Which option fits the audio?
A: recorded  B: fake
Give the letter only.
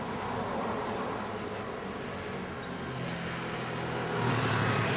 A